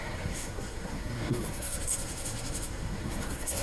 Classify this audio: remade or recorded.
remade